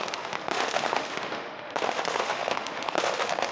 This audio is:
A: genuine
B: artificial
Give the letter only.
B